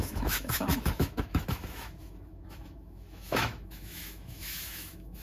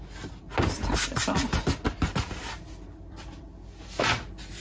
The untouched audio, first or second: second